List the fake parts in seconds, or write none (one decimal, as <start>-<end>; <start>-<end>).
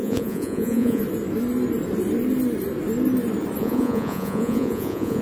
0.0-1.0; 3.6-5.2